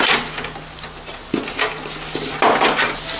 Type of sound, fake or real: real